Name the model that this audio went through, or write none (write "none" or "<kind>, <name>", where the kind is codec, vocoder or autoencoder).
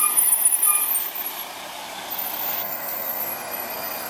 none